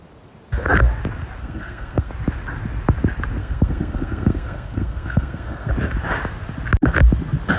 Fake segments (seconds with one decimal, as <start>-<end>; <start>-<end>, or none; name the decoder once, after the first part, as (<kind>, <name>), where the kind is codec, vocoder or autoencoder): 1.4-2.1 (codec, SNAC); 3.4-5.7